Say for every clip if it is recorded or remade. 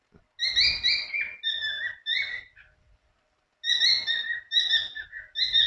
recorded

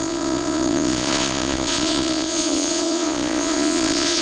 remade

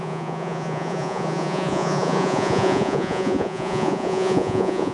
remade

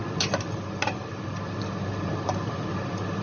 recorded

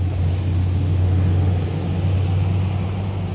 recorded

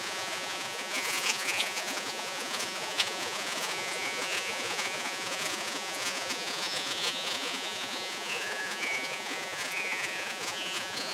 remade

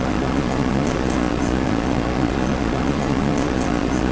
remade